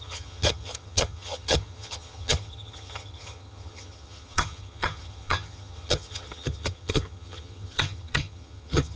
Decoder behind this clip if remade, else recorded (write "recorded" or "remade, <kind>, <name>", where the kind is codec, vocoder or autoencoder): remade, vocoder, HiFi-GAN